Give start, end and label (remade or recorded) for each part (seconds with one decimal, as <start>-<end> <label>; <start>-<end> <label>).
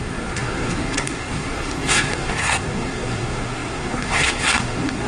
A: 0.0-5.1 remade